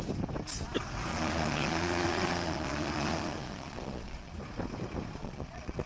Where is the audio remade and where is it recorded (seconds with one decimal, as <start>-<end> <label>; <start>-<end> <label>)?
0.0-1.1 recorded; 1.1-4.3 remade; 4.3-5.2 recorded; 5.2-5.9 remade